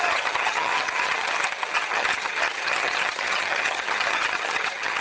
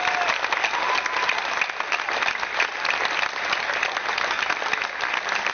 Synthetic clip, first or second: first